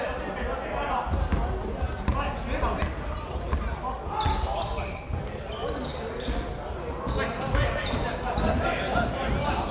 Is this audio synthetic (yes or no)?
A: no